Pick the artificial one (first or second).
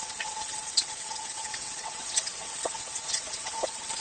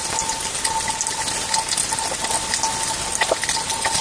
first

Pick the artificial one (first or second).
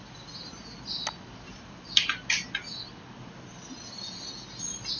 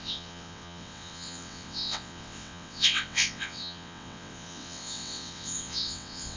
second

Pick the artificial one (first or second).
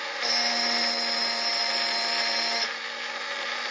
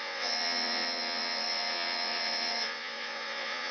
second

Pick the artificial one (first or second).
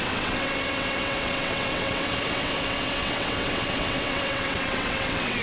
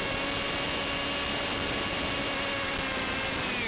first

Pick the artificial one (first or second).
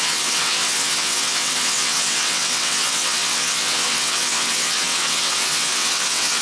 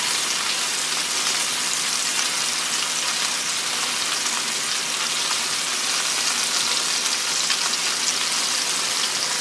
first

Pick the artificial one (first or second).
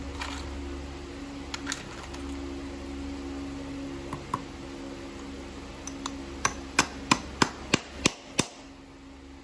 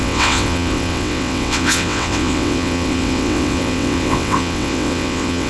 second